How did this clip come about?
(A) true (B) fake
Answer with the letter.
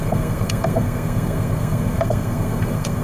B